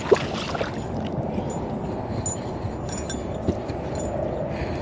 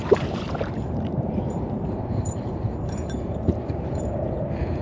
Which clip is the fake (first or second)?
second